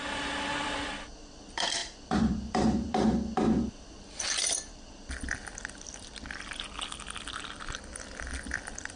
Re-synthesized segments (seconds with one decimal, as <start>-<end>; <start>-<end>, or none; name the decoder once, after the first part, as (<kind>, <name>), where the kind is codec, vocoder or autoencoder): 0.0-5.4 (vocoder, BigVGAN v2); 8.6-9.0